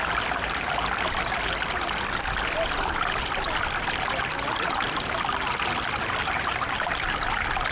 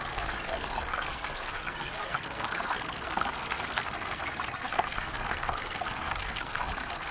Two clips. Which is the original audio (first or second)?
first